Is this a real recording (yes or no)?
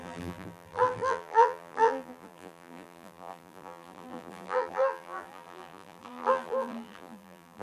no